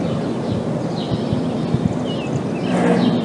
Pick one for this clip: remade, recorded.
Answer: recorded